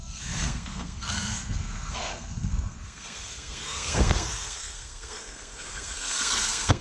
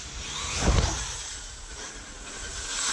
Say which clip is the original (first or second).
second